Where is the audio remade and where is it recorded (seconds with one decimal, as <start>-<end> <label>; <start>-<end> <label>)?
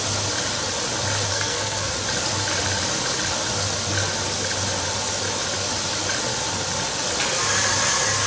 0.0-1.3 recorded; 1.3-1.9 remade; 1.9-8.3 recorded